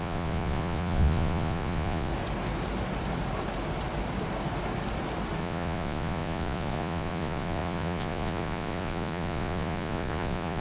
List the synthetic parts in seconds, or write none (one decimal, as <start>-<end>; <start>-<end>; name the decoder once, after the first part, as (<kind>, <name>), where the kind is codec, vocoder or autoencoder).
0.0-2.1 (vocoder, Vocos); 5.4-10.6